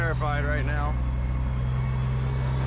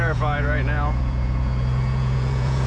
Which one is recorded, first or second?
first